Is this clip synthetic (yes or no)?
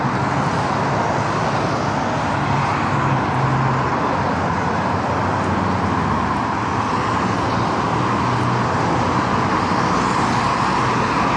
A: no